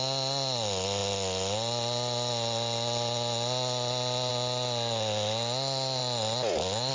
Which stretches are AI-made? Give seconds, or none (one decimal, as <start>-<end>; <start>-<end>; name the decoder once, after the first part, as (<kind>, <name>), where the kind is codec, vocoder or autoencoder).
none